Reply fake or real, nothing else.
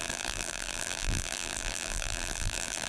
fake